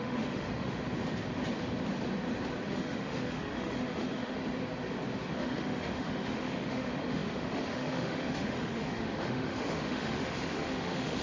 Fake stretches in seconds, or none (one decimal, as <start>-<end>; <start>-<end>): 0.0-0.8; 2.7-4.4; 5.3-11.2

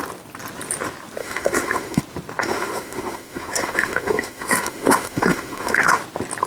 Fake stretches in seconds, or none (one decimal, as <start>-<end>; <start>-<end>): 1.2-2.0; 2.4-6.0

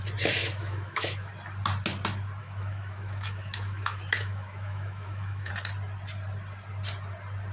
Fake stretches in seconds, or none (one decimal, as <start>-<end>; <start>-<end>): 0.4-1.3; 2.4-5.5

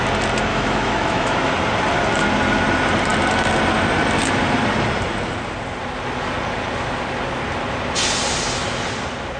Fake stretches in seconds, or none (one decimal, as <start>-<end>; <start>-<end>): 0.5-1.5